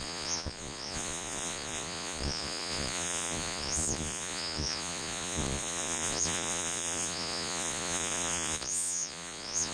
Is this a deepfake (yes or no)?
yes